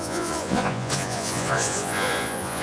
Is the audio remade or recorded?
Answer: remade